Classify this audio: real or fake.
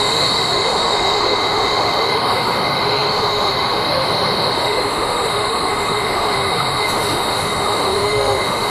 fake